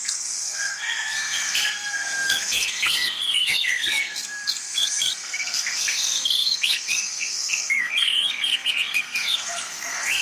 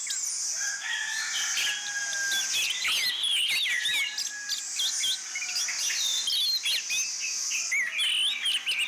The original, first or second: second